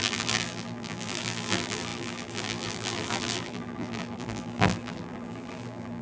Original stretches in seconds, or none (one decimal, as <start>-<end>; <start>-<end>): none